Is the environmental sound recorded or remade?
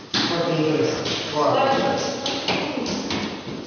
recorded